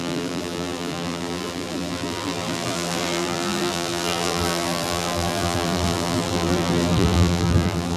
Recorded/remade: remade